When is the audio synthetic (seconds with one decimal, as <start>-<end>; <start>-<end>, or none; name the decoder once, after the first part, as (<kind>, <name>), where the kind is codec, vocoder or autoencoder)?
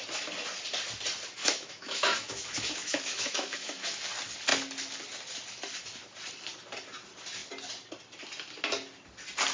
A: 1.4-4.0 (autoencoder, DAC-VAE)